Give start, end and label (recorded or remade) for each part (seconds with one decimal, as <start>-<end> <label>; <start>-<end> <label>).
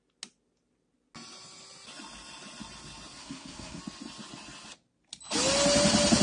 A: 0.0-3.2 recorded; 3.2-3.8 remade; 3.8-6.2 recorded